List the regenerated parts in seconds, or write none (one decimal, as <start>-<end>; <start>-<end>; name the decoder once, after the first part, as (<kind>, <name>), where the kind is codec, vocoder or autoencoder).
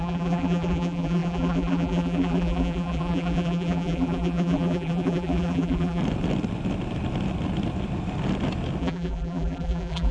0.0-6.0 (vocoder, BigVGAN v2); 8.8-10.1